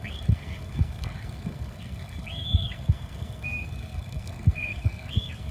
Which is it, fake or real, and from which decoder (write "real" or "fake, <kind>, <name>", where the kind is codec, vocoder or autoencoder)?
fake, codec, SNAC